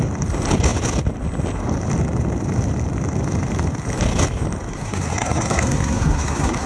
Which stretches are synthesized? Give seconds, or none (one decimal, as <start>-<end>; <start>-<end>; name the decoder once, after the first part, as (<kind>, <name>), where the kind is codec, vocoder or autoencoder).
4.7-6.7 (codec, SNAC)